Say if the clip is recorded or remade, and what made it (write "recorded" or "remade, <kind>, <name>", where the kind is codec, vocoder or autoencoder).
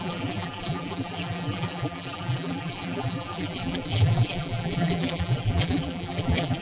remade, vocoder, BigVGAN v2